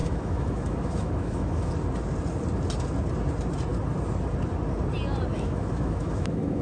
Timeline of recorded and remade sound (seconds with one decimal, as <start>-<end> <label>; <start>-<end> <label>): 0.0-1.7 remade; 1.7-5.3 recorded; 5.3-6.6 remade